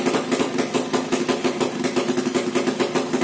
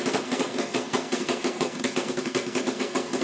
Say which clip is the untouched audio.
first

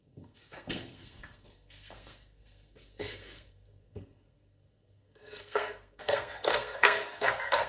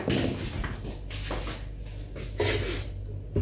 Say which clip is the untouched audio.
second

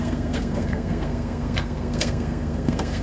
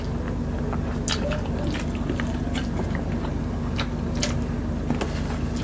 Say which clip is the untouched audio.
second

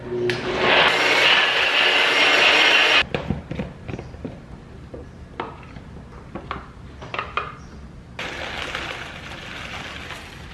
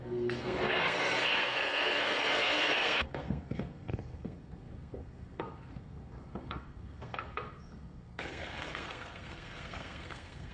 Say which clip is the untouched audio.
first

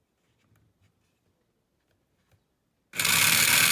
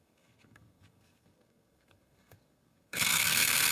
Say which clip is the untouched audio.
first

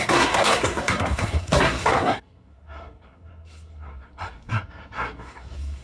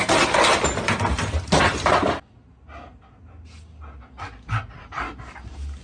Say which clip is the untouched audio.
second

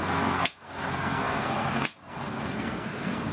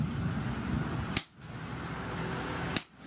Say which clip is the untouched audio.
second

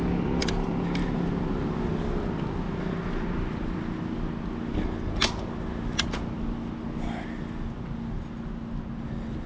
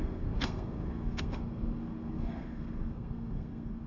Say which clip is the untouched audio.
first